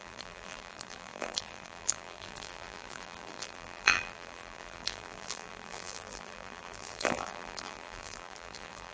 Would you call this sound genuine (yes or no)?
no